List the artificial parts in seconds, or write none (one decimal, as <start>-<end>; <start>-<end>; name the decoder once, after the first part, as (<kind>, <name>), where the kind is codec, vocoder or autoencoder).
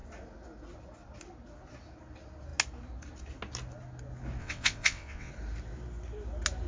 4.4-5.3 (vocoder, WaveNeXt)